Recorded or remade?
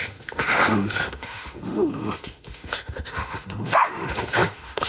remade